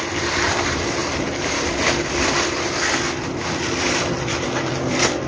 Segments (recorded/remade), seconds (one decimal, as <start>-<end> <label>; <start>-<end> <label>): 0.0-5.3 remade